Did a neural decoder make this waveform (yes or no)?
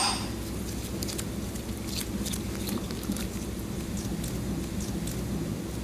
no